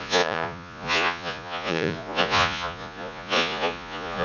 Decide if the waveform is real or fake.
fake